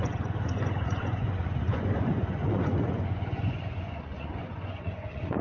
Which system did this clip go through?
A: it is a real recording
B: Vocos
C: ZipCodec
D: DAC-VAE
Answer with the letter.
B